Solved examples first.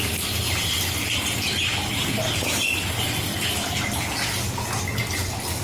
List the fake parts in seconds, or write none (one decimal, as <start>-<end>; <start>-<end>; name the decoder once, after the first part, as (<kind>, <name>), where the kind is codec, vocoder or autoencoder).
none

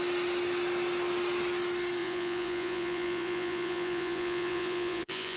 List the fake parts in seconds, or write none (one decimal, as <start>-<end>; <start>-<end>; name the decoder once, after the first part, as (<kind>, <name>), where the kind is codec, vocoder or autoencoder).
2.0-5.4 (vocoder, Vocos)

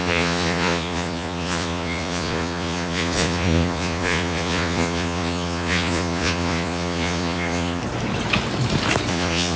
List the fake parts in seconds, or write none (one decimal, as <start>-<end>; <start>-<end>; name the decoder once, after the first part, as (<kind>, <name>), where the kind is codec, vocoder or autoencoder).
0.0-7.8 (vocoder, Vocos); 9.1-9.6

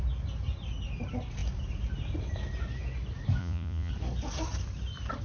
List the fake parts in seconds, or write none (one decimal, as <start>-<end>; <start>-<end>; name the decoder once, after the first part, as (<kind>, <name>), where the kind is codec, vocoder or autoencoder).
3.4-3.9 (vocoder, Vocos)